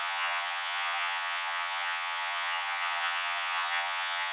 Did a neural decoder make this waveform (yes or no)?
yes